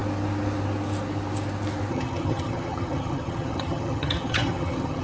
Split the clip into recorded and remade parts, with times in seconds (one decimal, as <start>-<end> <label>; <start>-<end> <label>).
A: 0.0-1.9 recorded; 1.9-5.0 remade